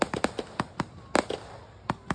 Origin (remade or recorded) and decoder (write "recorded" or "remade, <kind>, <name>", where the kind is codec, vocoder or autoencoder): recorded